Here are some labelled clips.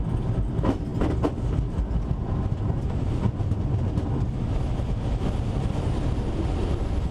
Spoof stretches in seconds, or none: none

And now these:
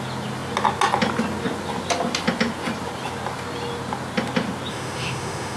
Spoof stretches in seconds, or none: 4.7-5.6 (autoencoder, DAC-VAE)

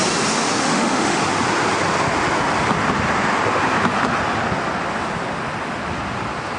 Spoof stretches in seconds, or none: 0.6-1.2 (autoencoder, DAC-VAE)

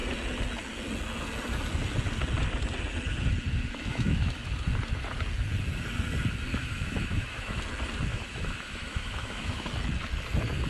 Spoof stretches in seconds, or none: 3.9-4.5 (autoencoder, DAC-VAE); 6.5-7.6; 8.1-9.7

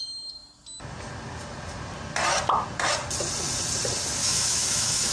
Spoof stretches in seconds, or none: 4.2-5.1 (autoencoder, DAC-VAE)

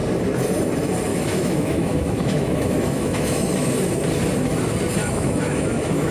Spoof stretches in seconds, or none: 1.1-3.7 (autoencoder, DAC-VAE); 5.0-6.1

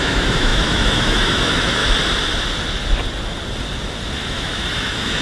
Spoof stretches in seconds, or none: 0.0-1.8 (autoencoder, DAC-VAE); 4.2-5.2